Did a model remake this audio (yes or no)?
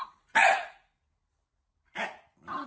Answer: no